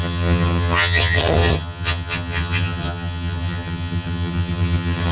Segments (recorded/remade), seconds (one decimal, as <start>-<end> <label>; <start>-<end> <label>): 0.0-5.1 remade